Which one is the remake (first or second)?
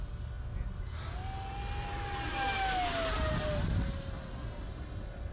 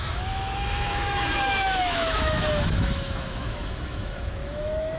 second